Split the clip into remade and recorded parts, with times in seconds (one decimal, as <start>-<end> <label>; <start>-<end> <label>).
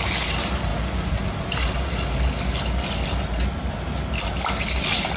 0.0-5.2 recorded